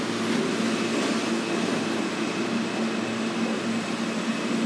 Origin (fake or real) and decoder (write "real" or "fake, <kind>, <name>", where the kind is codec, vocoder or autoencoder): real